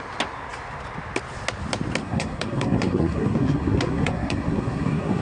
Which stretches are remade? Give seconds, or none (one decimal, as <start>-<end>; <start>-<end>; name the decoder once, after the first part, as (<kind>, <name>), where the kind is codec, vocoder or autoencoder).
2.0-5.2 (codec, SNAC)